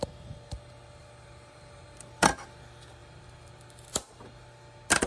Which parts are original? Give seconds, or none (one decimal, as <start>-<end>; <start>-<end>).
0.0-1.0; 2.0-3.0; 3.5-5.1